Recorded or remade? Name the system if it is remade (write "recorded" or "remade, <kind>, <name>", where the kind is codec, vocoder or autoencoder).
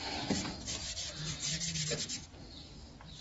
recorded